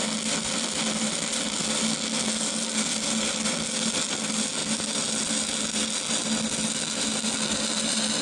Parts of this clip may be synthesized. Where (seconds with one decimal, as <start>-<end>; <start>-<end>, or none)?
none